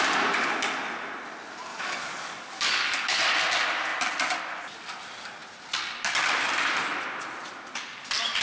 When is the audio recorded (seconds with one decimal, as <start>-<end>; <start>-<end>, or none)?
0.0-1.7; 3.2-8.4